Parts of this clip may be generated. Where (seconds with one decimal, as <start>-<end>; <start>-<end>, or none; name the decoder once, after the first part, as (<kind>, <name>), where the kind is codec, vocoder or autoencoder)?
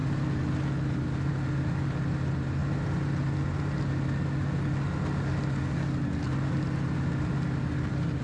none